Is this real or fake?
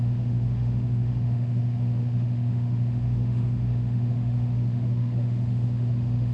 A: fake